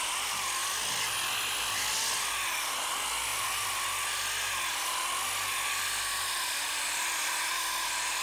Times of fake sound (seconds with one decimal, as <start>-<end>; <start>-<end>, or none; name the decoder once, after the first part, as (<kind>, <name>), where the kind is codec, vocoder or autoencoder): none